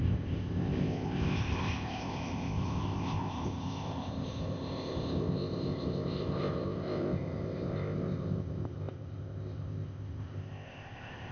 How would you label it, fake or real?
fake